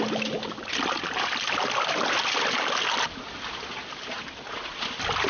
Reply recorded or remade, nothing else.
recorded